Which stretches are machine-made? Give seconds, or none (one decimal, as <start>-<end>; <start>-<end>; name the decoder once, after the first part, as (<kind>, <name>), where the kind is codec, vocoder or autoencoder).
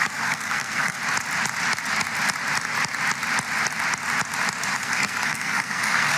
0.0-1.0 (codec, SNAC); 4.7-6.2